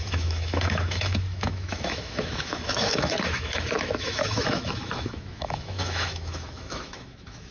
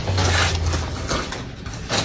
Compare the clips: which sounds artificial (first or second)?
first